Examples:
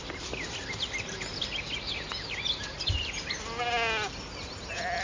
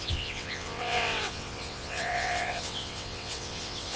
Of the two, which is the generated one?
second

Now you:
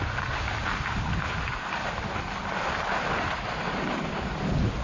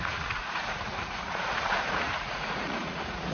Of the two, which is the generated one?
second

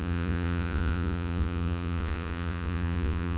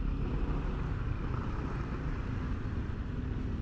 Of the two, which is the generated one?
first